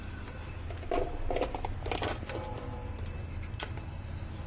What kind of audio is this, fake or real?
real